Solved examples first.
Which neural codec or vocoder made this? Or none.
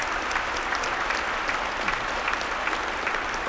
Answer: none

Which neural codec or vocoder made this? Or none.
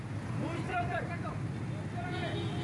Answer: none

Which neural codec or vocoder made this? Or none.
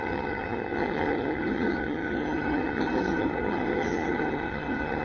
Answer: vocoder, HiFi-GAN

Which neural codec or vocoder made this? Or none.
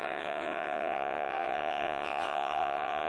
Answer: vocoder, WaveNeXt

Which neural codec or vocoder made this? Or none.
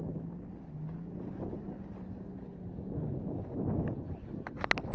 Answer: none